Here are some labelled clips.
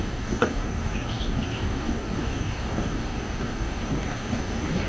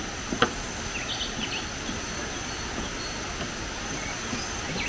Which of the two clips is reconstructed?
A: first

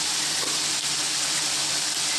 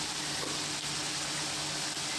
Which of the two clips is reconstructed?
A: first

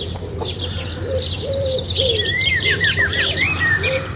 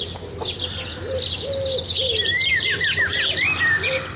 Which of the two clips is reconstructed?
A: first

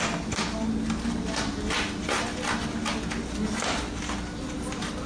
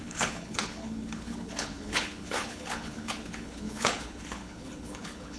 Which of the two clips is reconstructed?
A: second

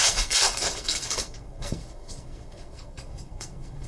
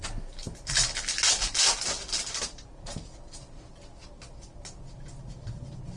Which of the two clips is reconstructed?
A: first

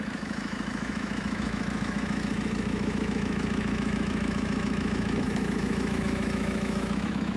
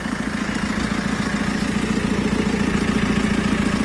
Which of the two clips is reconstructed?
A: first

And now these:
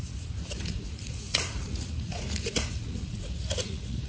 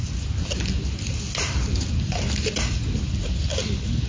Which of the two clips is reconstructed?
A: first